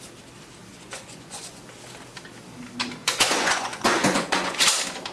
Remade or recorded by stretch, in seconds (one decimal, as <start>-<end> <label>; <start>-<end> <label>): 0.0-0.7 recorded; 0.7-1.6 remade; 1.6-3.0 recorded; 3.0-4.6 remade; 4.6-5.1 recorded